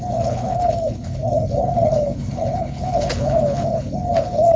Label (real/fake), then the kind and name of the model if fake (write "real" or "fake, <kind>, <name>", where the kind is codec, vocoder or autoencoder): fake, codec, HILCodec